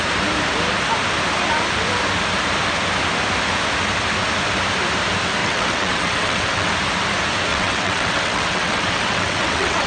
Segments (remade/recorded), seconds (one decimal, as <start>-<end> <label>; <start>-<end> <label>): 0.0-5.4 recorded; 5.4-6.7 remade; 6.7-7.5 recorded; 7.5-9.9 remade